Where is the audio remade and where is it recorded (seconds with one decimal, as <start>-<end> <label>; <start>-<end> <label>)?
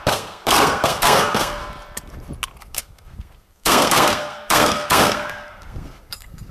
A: 0.0-1.6 remade; 1.6-2.6 recorded; 2.6-6.5 remade